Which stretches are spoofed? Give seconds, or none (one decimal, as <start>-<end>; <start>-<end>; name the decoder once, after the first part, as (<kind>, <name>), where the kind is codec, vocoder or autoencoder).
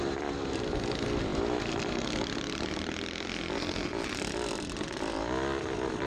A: none